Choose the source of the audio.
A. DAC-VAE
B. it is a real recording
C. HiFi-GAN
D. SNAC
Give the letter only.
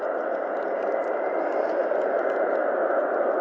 B